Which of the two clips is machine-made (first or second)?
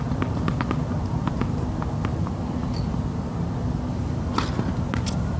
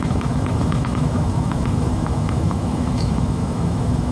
second